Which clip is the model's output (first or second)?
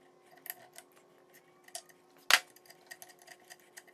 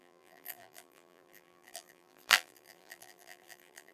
second